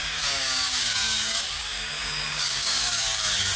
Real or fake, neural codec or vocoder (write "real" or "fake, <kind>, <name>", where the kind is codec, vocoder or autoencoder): fake, codec, DAC